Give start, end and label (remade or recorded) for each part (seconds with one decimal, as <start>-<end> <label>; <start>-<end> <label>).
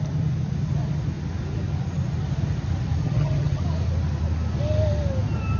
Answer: 0.0-3.0 recorded; 3.0-3.6 remade; 3.6-5.6 recorded